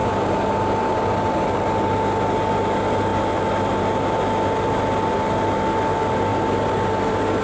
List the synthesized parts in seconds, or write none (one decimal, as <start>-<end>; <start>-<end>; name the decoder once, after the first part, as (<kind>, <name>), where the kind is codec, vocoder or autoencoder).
0.0-1.9 (vocoder, BigVGAN v2)